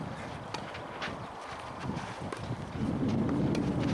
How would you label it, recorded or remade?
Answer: recorded